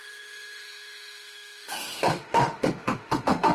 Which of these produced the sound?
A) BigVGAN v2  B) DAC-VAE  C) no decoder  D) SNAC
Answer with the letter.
B